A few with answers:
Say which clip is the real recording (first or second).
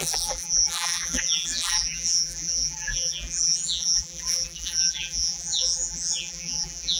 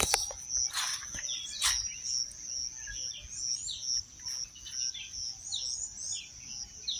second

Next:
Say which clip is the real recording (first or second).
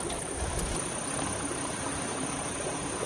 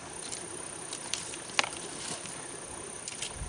second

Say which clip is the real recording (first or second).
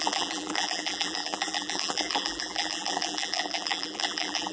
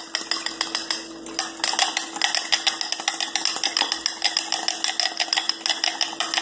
second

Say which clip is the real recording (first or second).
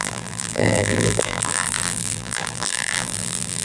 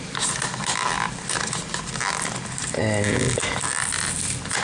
second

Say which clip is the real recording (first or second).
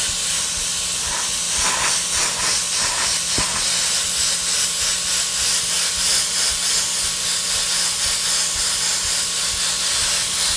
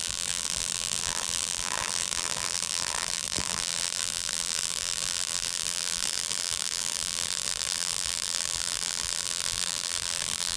first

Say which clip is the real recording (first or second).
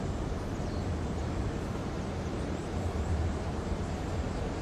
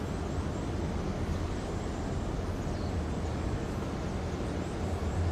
second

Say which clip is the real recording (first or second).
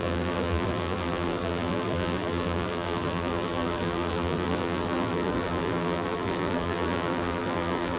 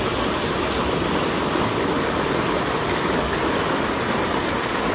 second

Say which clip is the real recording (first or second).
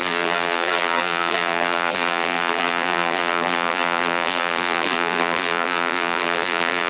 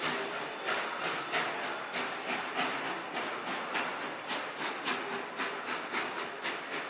second